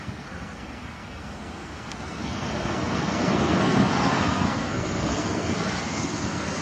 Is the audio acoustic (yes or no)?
no